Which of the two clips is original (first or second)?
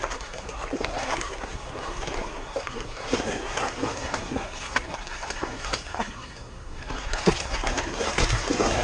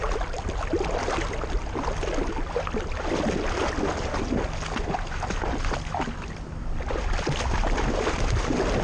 second